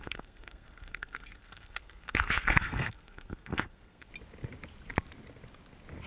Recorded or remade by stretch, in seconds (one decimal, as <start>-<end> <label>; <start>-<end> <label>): 0.0-4.1 remade; 4.1-6.1 recorded